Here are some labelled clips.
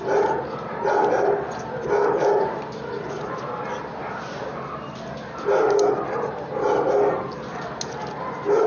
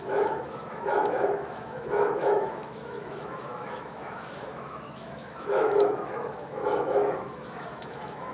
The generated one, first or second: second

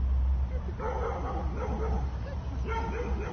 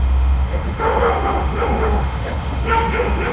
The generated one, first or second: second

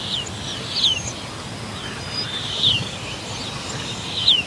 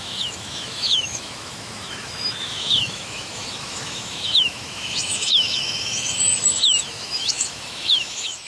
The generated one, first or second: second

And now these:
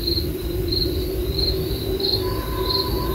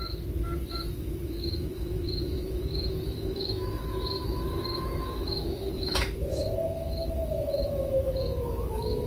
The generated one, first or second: second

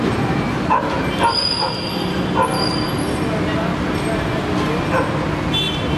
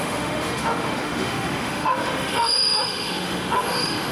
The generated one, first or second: second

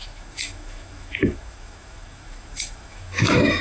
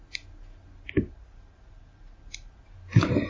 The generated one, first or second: first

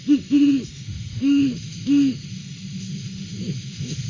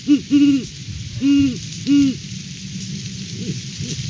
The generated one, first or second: first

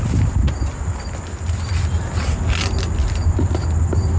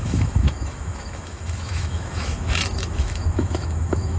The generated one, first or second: second